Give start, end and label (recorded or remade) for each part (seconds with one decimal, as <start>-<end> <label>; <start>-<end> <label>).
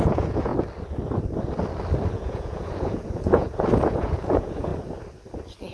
0.0-0.5 remade; 0.5-2.1 recorded; 2.1-4.7 remade; 4.7-5.7 recorded